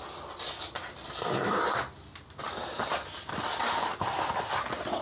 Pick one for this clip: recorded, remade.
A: recorded